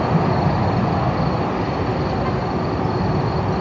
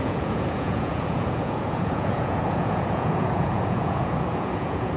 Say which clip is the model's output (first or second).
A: second